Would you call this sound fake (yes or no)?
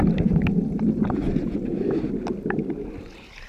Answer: no